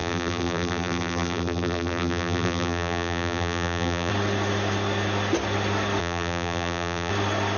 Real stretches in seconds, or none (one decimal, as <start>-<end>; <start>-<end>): 4.1-6.0; 7.1-7.6

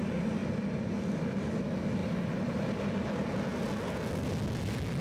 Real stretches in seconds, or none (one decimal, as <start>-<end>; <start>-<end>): 0.0-2.0; 2.6-5.0

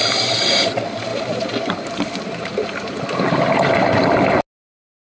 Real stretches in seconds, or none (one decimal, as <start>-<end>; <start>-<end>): 0.0-1.1; 4.2-5.1

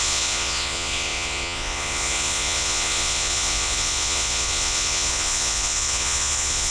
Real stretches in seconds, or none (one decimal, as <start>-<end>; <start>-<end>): none

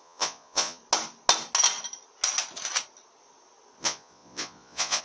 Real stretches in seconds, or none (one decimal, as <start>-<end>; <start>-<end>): 0.8-3.8

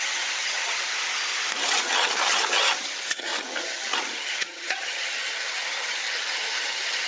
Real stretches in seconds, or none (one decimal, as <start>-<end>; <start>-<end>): 0.9-1.8

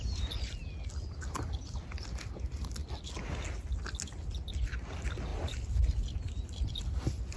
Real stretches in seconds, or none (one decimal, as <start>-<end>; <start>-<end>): 0.0-7.4

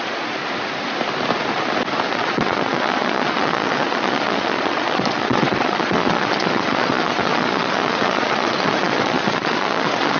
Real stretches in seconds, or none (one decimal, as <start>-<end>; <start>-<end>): 0.4-2.1